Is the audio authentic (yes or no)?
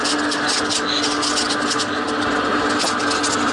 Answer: yes